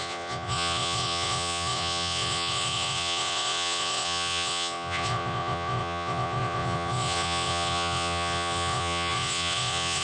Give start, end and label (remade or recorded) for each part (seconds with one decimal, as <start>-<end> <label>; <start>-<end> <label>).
0.0-10.0 remade